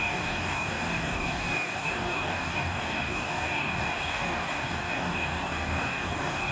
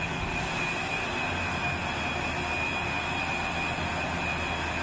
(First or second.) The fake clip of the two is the first